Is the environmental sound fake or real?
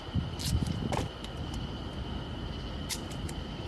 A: real